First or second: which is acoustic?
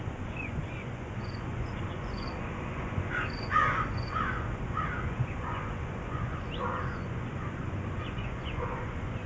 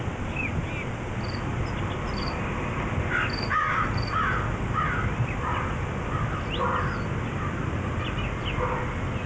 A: second